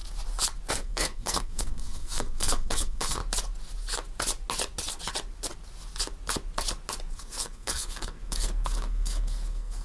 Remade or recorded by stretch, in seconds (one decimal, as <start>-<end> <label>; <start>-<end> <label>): 0.0-0.7 recorded; 0.7-3.2 remade; 3.2-7.1 recorded; 7.1-9.8 remade